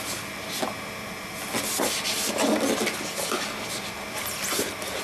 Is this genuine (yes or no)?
yes